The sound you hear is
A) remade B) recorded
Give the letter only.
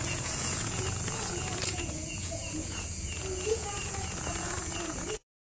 A